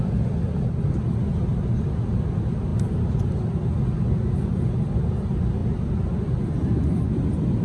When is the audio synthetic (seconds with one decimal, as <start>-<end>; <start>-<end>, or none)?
none